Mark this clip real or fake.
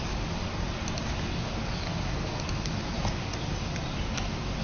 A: real